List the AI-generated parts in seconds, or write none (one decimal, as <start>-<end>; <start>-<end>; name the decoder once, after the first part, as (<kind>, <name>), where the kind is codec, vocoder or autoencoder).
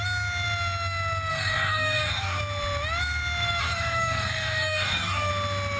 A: 1.3-2.4 (codec, DAC); 3.6-5.3